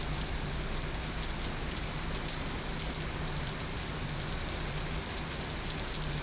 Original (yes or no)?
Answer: yes